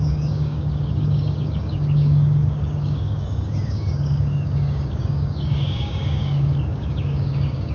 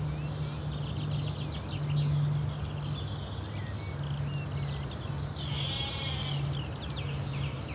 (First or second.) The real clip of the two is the second